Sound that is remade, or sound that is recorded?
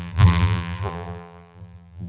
remade